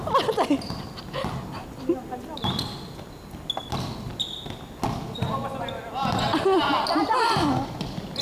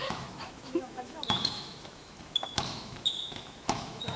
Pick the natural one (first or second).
first